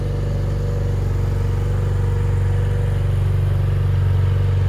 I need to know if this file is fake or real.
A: real